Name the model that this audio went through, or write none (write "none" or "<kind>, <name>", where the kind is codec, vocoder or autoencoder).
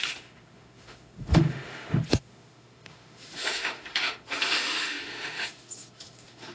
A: autoencoder, DAC-VAE